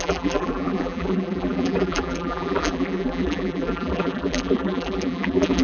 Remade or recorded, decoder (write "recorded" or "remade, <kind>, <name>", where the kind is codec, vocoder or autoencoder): remade, vocoder, BigVGAN v2